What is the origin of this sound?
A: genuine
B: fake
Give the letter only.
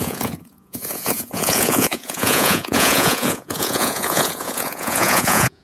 B